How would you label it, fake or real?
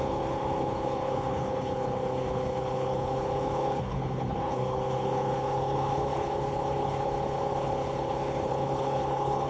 fake